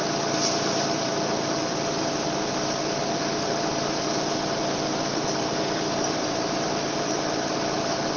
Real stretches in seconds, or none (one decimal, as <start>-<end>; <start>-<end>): 2.3-3.0; 7.2-8.2